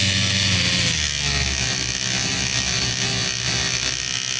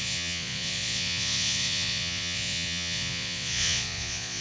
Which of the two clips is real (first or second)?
first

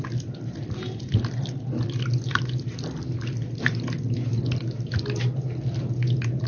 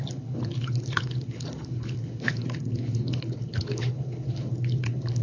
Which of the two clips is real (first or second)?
first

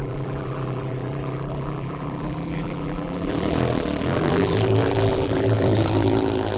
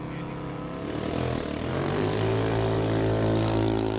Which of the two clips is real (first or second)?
second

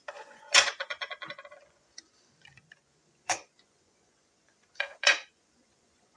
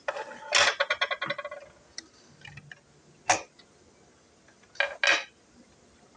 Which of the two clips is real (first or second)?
second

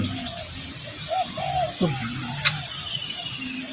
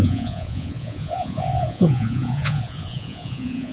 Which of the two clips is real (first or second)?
first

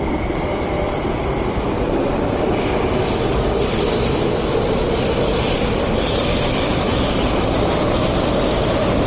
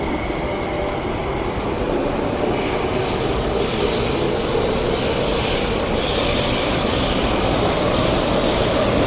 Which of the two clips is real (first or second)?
second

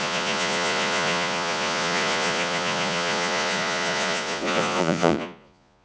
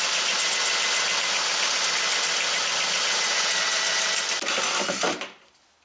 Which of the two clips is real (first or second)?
second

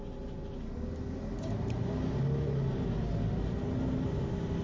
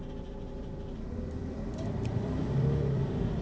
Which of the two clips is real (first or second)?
first